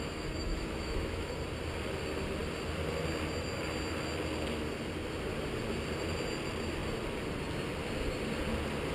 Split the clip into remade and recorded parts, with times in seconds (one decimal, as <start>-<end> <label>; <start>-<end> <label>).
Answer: 0.0-1.3 remade; 1.3-8.9 recorded